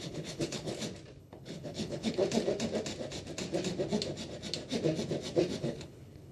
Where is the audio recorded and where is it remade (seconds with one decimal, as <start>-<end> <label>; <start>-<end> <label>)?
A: 0.0-0.7 remade; 0.7-1.2 recorded; 1.2-2.2 remade; 2.2-5.6 recorded; 5.6-6.3 remade